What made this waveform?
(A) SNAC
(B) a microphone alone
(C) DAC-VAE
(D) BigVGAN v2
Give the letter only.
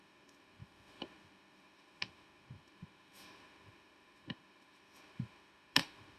C